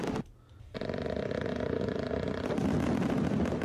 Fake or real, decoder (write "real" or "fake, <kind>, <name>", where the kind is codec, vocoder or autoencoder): real